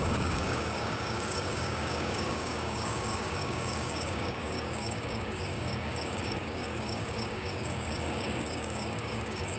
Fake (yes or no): yes